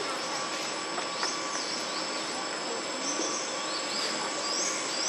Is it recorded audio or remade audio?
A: recorded